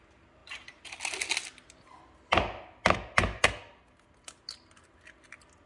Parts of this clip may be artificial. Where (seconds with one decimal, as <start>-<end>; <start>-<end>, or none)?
none

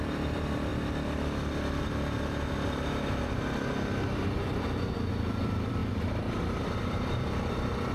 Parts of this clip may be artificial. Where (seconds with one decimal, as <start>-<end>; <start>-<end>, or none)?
0.0-0.7; 5.1-7.9

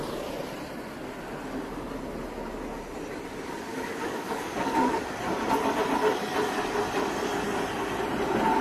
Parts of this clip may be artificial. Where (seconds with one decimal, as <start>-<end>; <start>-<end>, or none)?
3.7-5.0

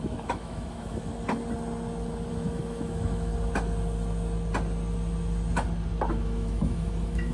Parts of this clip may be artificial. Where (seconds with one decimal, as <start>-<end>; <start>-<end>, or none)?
0.0-1.1; 2.3-3.3; 6.1-7.3

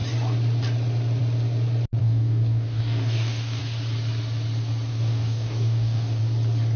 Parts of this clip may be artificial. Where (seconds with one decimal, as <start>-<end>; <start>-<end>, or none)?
2.0-3.6; 4.9-6.2

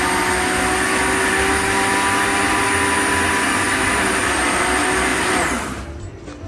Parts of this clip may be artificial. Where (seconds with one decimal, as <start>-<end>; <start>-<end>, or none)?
3.8-4.6; 5.1-6.0